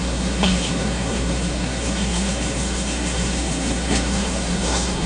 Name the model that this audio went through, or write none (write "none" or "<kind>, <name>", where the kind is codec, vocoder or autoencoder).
codec, SNAC